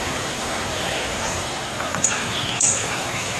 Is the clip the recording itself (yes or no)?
no